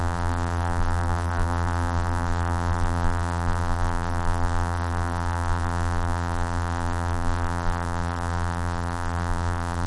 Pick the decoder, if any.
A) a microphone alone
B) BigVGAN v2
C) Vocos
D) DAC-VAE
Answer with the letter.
B